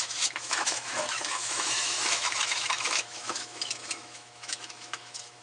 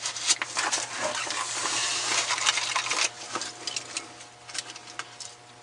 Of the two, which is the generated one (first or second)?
first